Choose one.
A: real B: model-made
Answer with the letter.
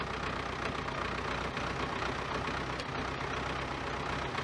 A